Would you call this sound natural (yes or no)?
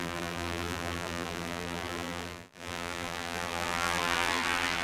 no